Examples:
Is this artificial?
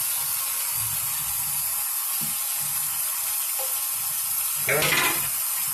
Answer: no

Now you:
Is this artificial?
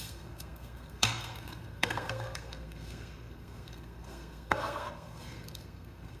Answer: yes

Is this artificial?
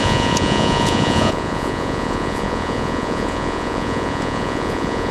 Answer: yes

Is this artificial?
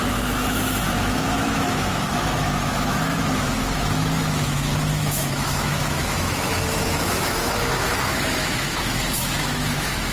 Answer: yes